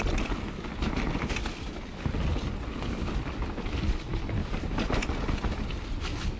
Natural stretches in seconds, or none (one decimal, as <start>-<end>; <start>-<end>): 0.0-6.4